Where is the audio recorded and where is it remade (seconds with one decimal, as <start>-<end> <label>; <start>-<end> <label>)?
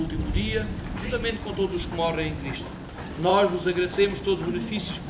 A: 0.0-5.1 recorded